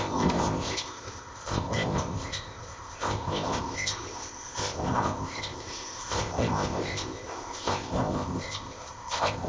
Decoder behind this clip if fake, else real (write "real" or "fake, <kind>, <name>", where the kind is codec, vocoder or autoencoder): fake, codec, ZipCodec